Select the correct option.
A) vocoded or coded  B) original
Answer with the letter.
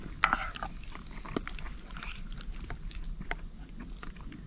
B